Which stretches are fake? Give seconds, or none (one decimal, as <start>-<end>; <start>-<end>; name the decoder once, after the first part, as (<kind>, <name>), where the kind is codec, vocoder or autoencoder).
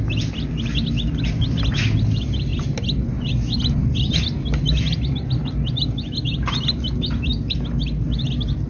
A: none